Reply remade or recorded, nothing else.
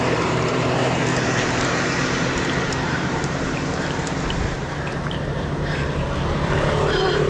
remade